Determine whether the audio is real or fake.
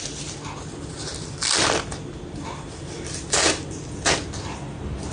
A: real